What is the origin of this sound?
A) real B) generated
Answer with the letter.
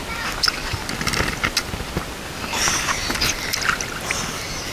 A